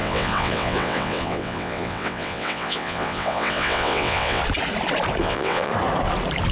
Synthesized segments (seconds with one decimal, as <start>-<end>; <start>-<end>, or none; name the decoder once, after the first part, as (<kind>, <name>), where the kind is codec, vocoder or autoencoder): 0.0-4.4 (vocoder, WaveNeXt); 5.2-5.7